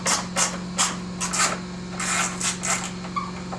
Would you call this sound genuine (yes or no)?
yes